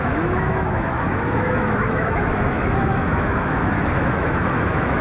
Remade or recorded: remade